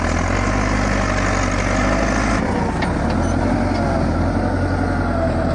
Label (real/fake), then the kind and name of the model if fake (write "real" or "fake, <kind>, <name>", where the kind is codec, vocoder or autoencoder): real